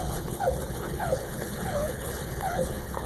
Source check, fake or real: fake